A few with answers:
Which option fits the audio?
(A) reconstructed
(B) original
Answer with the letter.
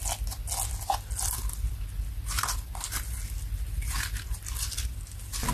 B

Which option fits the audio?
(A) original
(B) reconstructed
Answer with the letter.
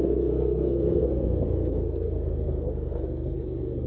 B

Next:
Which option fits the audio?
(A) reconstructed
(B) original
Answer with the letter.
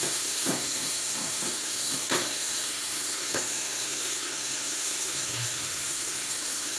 A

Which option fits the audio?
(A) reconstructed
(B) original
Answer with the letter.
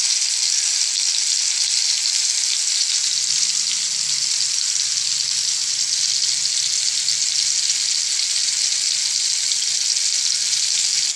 B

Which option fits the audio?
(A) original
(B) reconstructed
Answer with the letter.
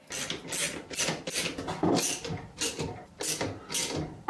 A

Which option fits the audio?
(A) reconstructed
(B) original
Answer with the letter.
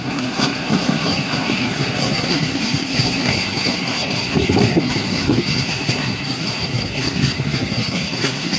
A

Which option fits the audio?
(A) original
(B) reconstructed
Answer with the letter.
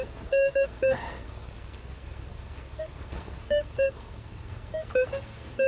B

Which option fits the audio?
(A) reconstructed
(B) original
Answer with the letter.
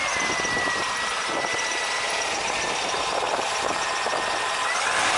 B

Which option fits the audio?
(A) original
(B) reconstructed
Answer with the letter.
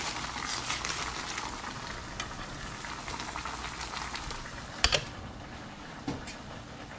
A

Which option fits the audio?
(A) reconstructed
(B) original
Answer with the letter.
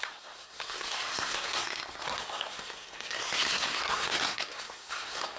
A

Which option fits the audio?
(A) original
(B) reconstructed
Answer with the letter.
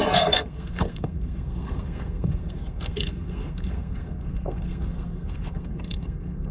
B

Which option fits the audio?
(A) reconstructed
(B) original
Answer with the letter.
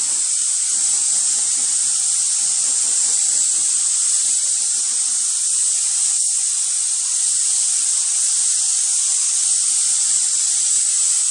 B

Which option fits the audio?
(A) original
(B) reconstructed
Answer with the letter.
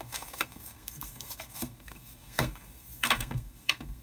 B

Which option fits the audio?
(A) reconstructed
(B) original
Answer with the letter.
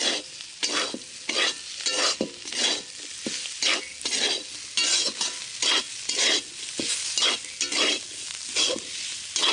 B